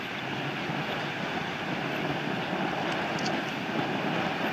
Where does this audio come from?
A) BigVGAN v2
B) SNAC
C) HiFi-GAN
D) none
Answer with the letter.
D